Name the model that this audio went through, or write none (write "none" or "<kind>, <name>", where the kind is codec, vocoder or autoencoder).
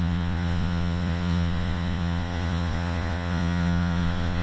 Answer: vocoder, Vocos